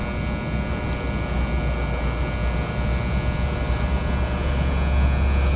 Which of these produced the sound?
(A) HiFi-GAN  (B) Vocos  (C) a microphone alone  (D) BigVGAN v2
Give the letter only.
C